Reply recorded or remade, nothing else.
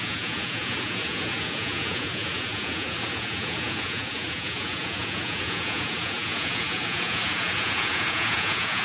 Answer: remade